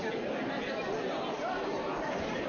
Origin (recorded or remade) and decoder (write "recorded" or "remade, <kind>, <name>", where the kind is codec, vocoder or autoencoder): recorded